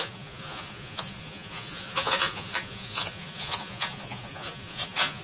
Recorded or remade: remade